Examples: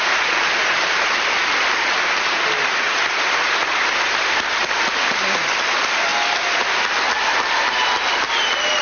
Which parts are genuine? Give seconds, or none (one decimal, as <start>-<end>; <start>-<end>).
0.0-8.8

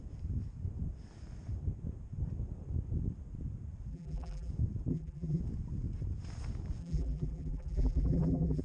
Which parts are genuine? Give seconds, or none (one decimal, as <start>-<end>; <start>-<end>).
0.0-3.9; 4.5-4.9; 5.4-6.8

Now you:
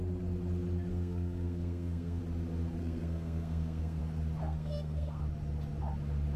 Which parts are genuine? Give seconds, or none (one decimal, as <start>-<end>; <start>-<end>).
0.0-0.9; 2.2-2.8; 4.0-4.4; 5.2-6.4

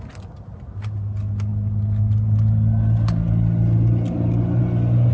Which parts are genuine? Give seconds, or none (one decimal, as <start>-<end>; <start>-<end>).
0.0-5.1